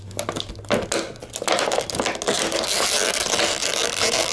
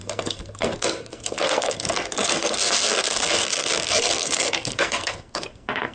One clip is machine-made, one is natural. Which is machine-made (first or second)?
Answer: second